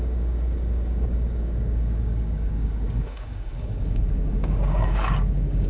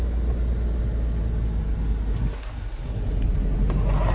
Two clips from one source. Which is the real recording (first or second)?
second